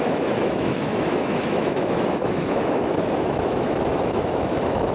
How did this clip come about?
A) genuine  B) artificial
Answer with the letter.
B